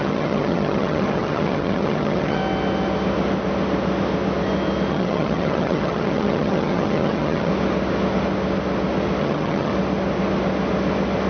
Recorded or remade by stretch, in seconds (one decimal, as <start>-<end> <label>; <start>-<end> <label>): 0.0-2.4 remade; 2.4-4.9 recorded; 4.9-7.5 remade; 7.5-9.2 recorded; 9.2-9.7 remade; 9.7-11.3 recorded